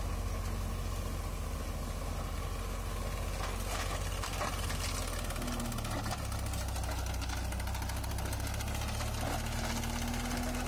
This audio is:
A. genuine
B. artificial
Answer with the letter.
A